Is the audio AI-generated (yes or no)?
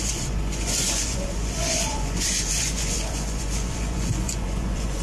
yes